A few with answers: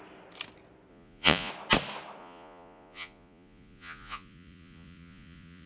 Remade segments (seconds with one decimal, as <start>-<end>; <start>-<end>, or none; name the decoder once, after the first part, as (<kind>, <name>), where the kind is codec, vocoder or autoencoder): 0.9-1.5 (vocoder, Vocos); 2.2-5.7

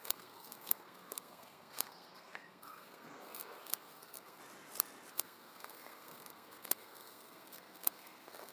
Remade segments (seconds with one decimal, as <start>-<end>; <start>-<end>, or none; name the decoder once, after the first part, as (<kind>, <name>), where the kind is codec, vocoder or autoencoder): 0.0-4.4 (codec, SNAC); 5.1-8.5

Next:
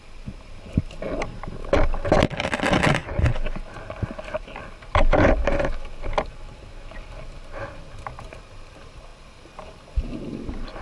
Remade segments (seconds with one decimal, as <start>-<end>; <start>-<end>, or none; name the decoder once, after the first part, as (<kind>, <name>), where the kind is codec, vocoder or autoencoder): none